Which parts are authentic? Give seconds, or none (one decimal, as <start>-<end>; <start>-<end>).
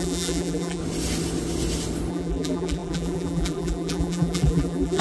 0.8-2.1